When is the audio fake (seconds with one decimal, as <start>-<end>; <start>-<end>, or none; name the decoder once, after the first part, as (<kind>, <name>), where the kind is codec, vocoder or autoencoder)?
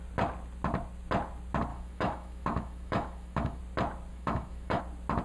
1.7-3.6 (autoencoder, DAC-VAE); 4.1-4.8